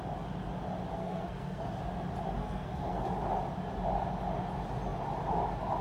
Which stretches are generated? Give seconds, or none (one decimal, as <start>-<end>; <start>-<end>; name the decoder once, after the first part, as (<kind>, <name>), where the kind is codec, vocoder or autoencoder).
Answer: 1.0-1.7 (codec, SNAC); 2.4-3.0